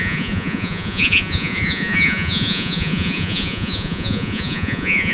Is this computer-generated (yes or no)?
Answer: yes